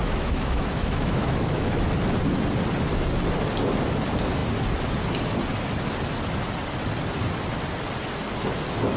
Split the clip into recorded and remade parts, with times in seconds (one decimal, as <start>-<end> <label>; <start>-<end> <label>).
0.0-1.8 remade; 1.8-9.0 recorded